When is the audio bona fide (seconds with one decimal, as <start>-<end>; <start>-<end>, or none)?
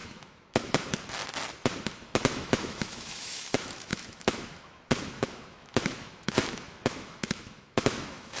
1.2-1.8